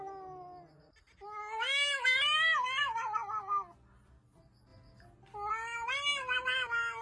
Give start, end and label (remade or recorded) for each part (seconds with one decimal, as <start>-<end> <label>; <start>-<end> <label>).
0.0-7.0 recorded